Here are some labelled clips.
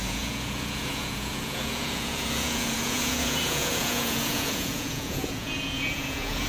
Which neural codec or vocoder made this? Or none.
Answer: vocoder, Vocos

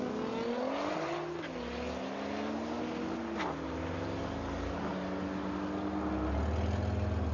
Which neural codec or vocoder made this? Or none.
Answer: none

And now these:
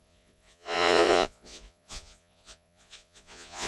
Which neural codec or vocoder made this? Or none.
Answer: vocoder, Vocos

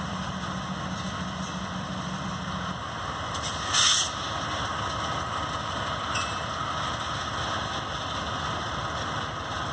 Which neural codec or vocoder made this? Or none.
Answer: none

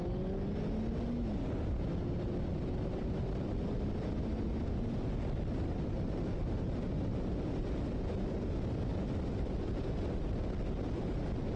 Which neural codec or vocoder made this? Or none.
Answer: none